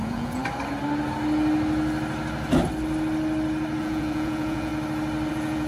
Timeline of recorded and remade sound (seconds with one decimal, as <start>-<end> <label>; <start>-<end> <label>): 0.0-0.4 remade; 0.4-3.8 recorded; 3.8-4.7 remade; 4.7-5.3 recorded; 5.3-5.7 remade